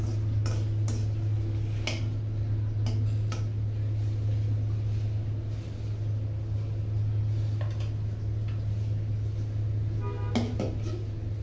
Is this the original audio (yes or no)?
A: yes